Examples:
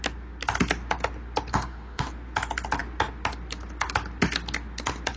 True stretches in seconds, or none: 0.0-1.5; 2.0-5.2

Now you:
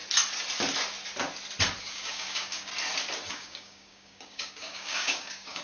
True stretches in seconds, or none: 0.0-1.8; 2.7-3.3